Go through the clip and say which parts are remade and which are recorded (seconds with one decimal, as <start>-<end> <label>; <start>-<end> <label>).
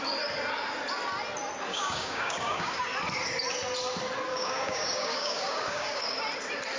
0.0-1.7 recorded; 1.7-2.8 remade; 2.8-4.3 recorded; 4.3-6.0 remade; 6.0-6.8 recorded